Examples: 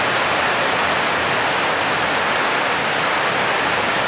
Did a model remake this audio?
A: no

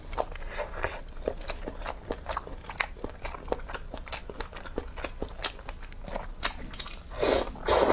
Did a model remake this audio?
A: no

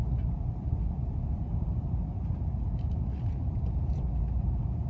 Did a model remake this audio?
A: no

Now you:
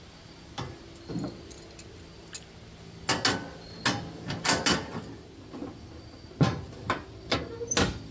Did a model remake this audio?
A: no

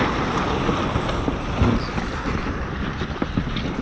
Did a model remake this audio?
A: no